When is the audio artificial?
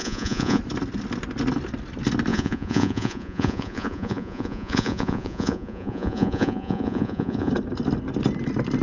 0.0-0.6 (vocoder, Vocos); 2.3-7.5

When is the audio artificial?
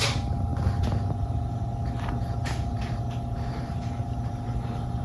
0.0-0.5 (vocoder, BigVGAN v2); 3.5-5.0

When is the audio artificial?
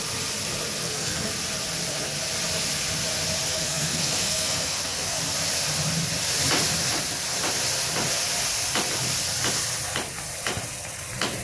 0.8-1.3 (codec, SNAC); 3.5-5.2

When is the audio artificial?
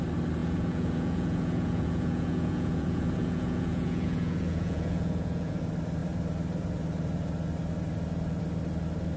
0.4-5.6 (vocoder, Vocos)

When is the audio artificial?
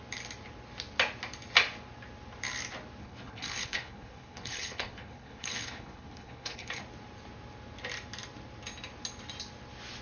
3.0-6.8 (codec, HILCodec)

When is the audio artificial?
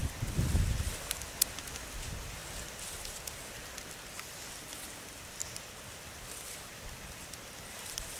0.0-2.4 (vocoder, BigVGAN v2); 3.1-5.4; 6.0-8.2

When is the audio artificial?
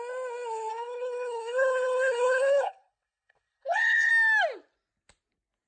0.7-4.1 (codec, HILCodec)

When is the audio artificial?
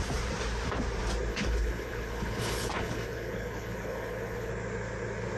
1.3-4.5 (codec, HILCodec)